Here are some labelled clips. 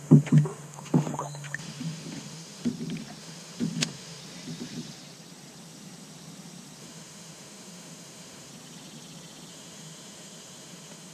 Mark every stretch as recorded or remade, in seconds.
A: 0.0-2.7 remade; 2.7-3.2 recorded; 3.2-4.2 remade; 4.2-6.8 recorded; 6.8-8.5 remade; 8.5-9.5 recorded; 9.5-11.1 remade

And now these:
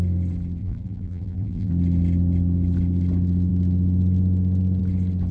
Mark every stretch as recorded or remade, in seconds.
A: 0.0-0.6 recorded; 0.6-1.7 remade; 1.7-5.3 recorded

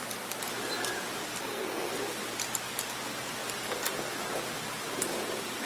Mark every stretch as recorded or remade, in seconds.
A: 0.0-1.4 recorded; 1.4-1.9 remade; 1.9-5.7 recorded

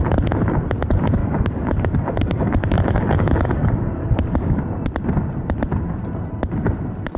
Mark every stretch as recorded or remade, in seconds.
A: 0.0-1.2 recorded; 1.2-4.6 remade; 4.6-7.2 recorded

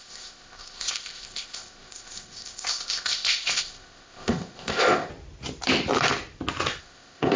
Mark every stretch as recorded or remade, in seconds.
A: 0.0-5.1 remade; 5.1-6.8 recorded; 6.8-7.4 remade

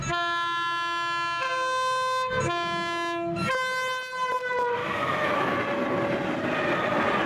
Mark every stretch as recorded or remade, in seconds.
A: 0.0-4.8 recorded; 4.8-5.5 remade; 5.5-7.3 recorded

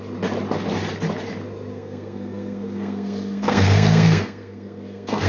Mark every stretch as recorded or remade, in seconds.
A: 0.0-1.7 recorded; 1.7-5.3 remade